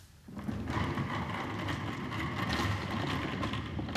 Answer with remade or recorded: recorded